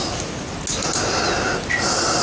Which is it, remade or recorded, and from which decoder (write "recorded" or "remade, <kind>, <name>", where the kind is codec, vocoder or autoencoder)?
recorded